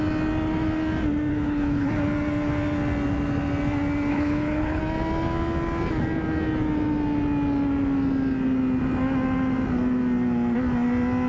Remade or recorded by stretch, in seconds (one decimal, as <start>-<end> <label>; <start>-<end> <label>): 0.0-1.3 recorded; 1.3-1.9 remade; 1.9-4.1 recorded; 4.1-4.8 remade; 4.8-11.3 recorded